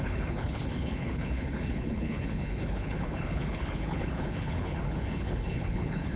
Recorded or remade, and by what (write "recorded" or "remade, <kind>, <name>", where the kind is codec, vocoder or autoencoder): remade, codec, HILCodec